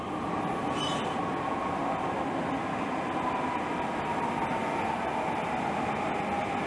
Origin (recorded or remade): recorded